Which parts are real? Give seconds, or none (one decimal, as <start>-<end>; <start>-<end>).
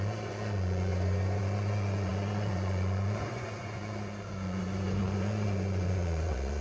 0.9-1.4